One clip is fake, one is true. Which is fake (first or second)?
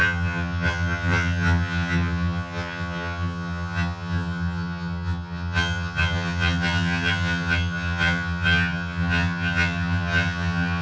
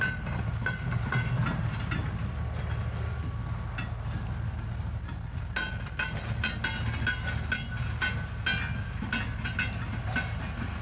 first